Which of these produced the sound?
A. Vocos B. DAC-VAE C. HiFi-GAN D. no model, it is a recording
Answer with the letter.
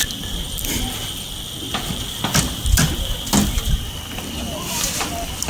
D